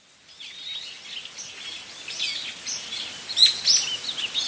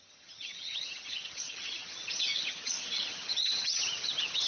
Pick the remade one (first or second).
second